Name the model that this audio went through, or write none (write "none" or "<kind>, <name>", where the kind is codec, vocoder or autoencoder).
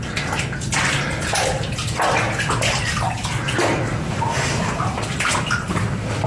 none